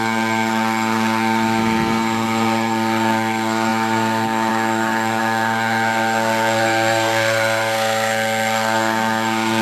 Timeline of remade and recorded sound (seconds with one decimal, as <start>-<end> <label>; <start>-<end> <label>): 0.0-9.6 remade